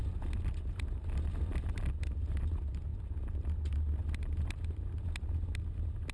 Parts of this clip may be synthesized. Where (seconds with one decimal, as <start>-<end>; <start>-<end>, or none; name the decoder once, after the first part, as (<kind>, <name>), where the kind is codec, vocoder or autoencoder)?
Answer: none